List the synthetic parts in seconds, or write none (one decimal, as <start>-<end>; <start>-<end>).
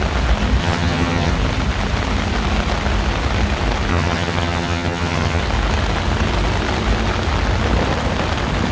0.6-1.3; 3.9-5.4